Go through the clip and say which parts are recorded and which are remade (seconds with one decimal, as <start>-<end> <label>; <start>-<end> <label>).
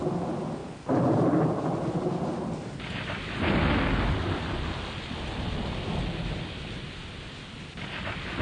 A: 0.0-8.4 recorded